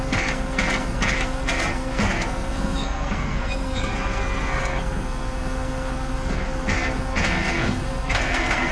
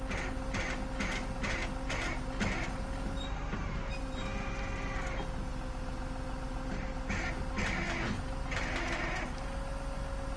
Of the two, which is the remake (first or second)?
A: first